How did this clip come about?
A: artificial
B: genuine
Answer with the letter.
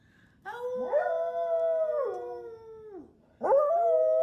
B